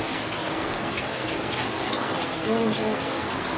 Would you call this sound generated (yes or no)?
yes